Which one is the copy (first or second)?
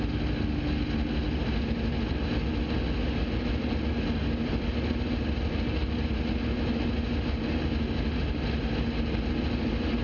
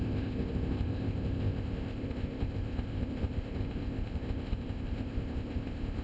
second